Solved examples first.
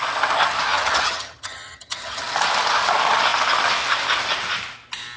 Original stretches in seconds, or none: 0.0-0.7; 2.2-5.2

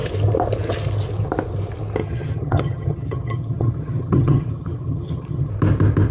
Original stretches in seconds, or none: 0.0-2.0; 5.5-6.1